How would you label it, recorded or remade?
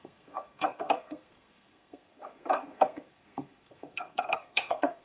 remade